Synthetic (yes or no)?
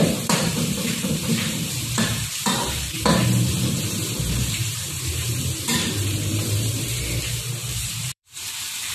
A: yes